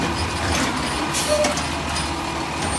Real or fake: real